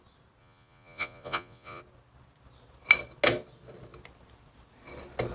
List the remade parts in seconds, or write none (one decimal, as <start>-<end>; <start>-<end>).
0.4-1.8